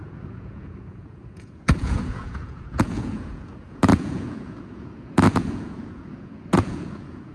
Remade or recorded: remade